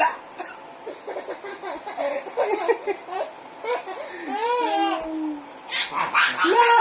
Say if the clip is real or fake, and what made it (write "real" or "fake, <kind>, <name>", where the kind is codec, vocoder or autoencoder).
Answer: real